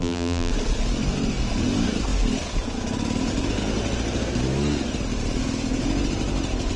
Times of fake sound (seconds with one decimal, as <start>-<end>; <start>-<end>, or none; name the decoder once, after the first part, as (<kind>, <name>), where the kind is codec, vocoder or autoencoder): 0.0-0.5 (vocoder, BigVGAN v2)